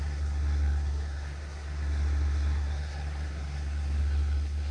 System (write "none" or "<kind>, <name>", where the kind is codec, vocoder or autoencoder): codec, SNAC